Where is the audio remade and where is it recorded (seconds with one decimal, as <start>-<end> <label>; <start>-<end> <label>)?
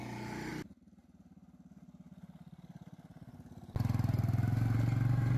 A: 0.0-5.4 recorded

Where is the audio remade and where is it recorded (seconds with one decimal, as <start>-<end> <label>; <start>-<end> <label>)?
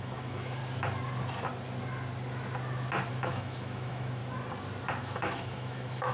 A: 0.0-0.6 remade; 0.6-3.1 recorded; 3.1-4.2 remade; 4.2-5.0 recorded; 5.0-6.1 remade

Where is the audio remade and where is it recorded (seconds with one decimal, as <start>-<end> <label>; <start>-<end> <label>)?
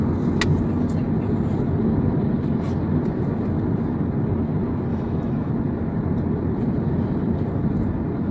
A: 0.0-4.9 recorded; 4.9-5.5 remade; 5.5-8.3 recorded